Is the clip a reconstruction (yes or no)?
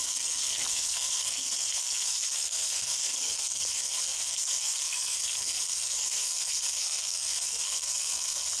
yes